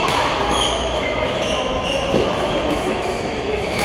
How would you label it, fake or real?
fake